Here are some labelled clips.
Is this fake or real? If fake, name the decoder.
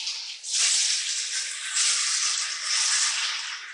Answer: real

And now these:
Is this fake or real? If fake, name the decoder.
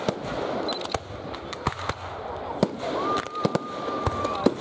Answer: real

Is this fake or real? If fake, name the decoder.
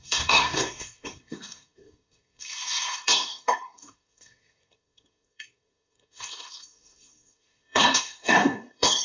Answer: fake, codec, SNAC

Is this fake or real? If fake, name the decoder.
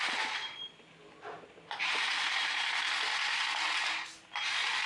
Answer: real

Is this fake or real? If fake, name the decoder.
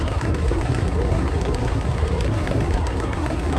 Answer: fake, codec, SNAC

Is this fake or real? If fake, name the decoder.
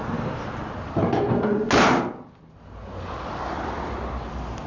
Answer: real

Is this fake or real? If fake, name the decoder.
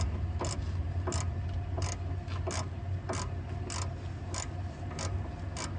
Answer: real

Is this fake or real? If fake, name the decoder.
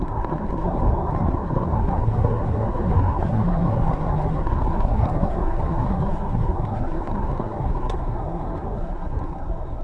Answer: fake, codec, SNAC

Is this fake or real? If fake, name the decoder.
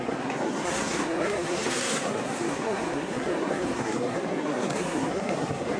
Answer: fake, codec, SNAC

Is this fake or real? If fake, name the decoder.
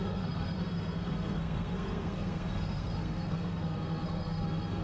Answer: fake, codec, SNAC